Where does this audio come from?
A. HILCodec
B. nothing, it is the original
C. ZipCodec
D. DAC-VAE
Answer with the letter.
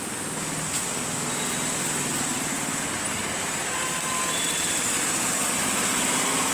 B